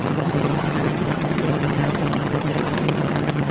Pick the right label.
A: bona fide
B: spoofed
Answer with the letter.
B